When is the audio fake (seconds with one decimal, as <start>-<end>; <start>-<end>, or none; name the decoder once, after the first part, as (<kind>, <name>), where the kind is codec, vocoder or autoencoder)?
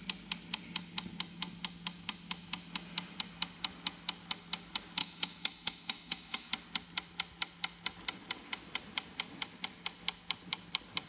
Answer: 5.0-6.5 (autoencoder, DAC-VAE)